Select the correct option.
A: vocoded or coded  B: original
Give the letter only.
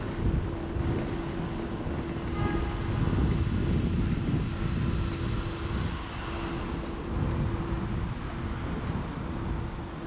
B